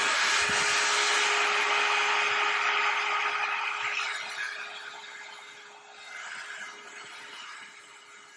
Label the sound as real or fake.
real